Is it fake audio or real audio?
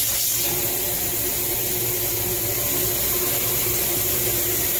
real